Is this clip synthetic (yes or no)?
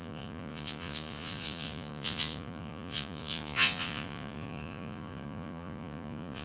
yes